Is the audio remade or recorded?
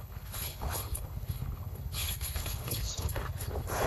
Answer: remade